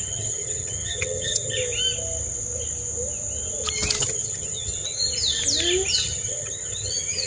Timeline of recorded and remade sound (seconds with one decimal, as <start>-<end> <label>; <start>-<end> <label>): 0.0-1.6 remade; 1.6-4.0 recorded; 4.0-5.0 remade; 5.0-5.9 recorded; 5.9-7.3 remade